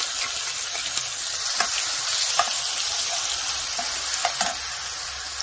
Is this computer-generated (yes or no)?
no